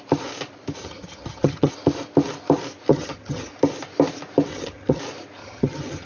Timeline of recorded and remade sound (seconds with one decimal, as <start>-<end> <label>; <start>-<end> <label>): 0.0-0.8 recorded; 0.8-1.7 remade; 1.7-2.9 recorded; 2.9-3.5 remade; 3.5-4.5 recorded; 4.5-5.0 remade; 5.0-5.4 recorded; 5.4-6.1 remade